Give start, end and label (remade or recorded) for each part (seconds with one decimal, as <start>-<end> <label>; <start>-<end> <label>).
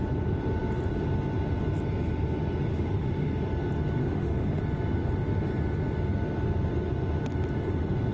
0.0-2.7 recorded; 2.7-3.3 remade; 3.3-4.0 recorded; 4.0-4.6 remade; 4.6-8.1 recorded